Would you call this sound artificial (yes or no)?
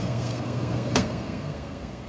yes